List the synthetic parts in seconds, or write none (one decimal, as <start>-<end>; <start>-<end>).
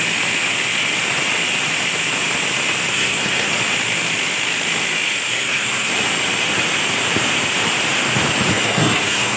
2.9-3.5; 5.3-5.9; 8.5-9.4